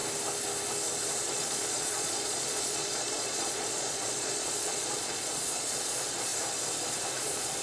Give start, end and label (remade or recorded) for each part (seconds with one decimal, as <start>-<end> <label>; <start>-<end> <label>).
0.0-1.2 recorded; 1.2-6.3 remade; 6.3-7.1 recorded; 7.1-7.6 remade

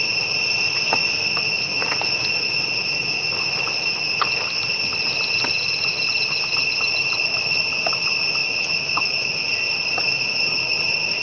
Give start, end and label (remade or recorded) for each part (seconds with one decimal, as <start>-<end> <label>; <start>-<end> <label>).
0.0-11.2 recorded

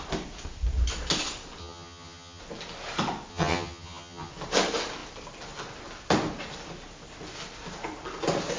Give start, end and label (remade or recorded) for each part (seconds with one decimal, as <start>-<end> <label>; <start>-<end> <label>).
0.0-1.6 recorded; 1.6-2.4 remade; 2.4-3.3 recorded; 3.3-4.3 remade; 4.3-8.6 recorded

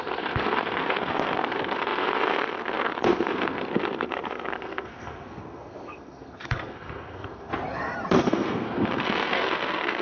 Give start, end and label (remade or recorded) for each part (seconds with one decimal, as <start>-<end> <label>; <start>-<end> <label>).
0.0-7.5 remade; 7.5-8.1 recorded; 8.1-10.0 remade

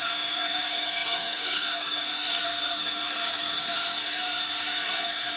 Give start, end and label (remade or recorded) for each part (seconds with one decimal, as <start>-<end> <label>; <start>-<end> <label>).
0.0-5.4 remade

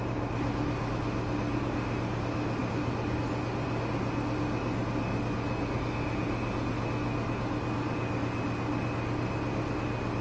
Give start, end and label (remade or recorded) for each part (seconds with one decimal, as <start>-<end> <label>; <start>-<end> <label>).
0.0-10.2 recorded

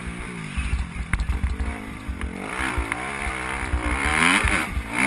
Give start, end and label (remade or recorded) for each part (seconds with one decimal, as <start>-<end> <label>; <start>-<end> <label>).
0.0-1.7 recorded; 1.7-2.7 remade; 2.7-3.3 recorded; 3.3-5.1 remade

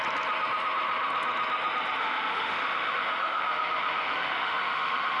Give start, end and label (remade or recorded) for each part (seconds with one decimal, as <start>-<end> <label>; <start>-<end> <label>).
0.0-2.0 recorded; 2.0-5.2 remade